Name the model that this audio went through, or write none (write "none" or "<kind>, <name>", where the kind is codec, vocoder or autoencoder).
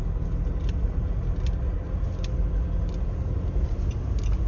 none